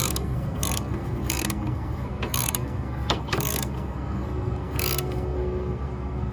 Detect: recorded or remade remade